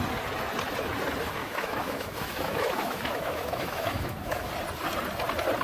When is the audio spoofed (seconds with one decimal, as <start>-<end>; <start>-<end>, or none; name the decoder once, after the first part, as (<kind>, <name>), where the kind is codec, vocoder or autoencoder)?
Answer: 1.4-4.5 (autoencoder, DAC-VAE)